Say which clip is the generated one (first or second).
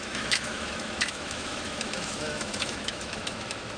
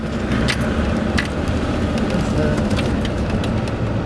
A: first